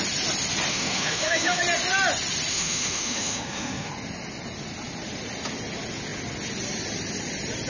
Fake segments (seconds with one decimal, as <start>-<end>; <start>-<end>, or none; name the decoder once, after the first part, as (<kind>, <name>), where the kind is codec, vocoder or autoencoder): 0.7-1.6 (autoencoder, DAC-VAE); 2.5-3.9

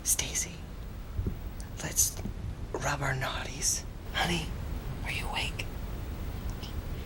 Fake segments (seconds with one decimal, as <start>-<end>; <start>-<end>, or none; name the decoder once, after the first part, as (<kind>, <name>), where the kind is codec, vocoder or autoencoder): 4.9-5.6 (autoencoder, DAC-VAE)

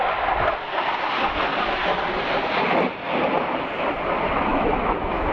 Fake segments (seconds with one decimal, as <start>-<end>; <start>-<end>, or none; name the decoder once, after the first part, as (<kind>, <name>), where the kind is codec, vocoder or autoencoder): 4.5-5.3 (autoencoder, DAC-VAE)

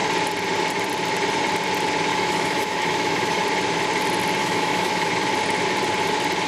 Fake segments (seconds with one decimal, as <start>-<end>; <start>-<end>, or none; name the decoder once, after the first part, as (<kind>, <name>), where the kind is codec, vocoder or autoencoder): 2.1-3.4 (autoencoder, DAC-VAE); 4.4-5.1

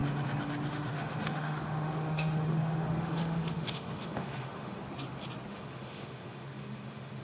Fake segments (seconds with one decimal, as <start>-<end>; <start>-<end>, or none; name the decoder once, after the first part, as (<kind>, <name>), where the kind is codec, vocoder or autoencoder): 0.7-4.8 (autoencoder, DAC-VAE); 5.5-7.2

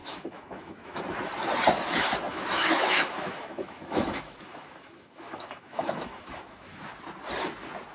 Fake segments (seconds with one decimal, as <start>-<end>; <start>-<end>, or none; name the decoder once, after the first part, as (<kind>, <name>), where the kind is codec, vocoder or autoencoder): 0.0-1.0 (autoencoder, DAC-VAE); 2.3-6.9